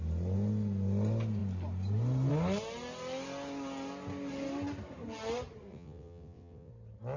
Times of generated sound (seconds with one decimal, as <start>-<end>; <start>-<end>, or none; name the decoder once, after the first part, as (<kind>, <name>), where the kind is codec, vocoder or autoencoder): 5.7-6.7 (vocoder, WaveNeXt)